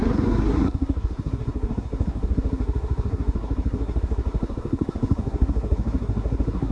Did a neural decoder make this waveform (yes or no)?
yes